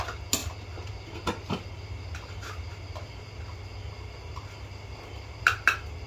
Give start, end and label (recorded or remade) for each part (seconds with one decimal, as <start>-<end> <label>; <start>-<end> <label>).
0.0-6.1 recorded